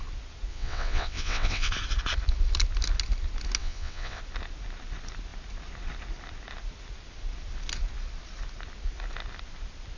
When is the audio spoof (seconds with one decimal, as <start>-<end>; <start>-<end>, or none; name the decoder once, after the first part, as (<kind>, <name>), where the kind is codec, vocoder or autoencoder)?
0.5-1.7 (vocoder, WaveNeXt); 3.6-4.2